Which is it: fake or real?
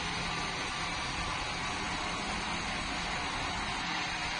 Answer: real